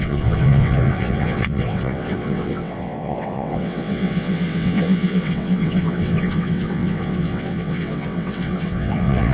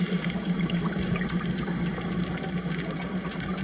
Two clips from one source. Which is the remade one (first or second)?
first